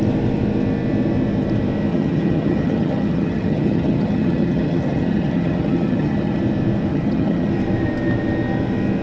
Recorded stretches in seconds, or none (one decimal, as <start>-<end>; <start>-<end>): 0.0-1.9; 6.4-6.9; 7.5-9.0